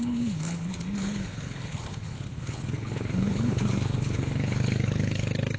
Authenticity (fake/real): fake